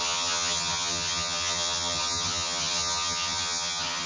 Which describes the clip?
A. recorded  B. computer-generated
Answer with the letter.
B